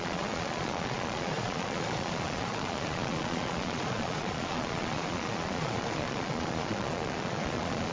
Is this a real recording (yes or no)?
no